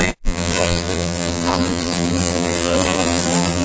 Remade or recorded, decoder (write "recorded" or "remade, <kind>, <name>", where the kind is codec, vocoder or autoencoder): remade, vocoder, BigVGAN v2